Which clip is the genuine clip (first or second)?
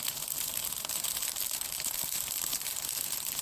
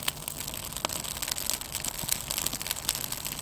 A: second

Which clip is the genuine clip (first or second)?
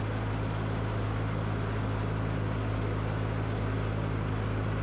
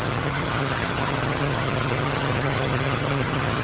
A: first